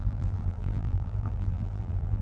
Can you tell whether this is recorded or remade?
remade